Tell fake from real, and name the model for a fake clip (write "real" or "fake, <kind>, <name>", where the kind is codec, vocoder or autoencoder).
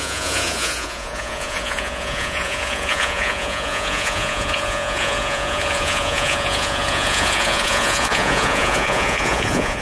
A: fake, vocoder, Vocos